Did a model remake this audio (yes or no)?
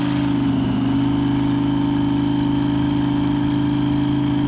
no